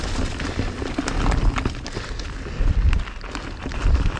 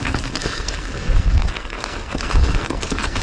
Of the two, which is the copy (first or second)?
second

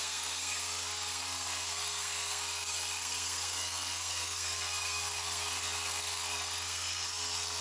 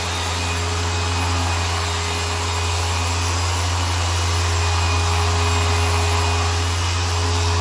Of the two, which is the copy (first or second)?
first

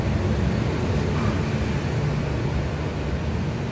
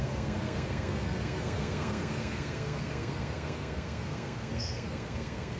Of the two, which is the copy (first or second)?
second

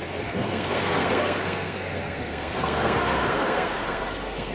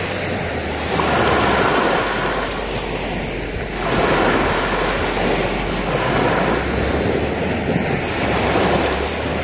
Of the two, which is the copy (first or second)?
first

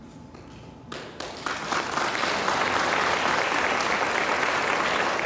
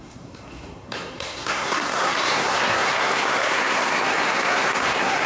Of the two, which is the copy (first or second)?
second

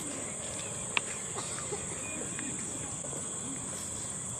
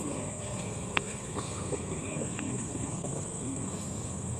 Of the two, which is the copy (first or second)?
second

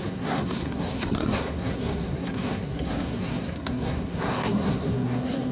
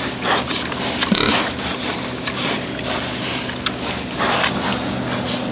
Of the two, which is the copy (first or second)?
first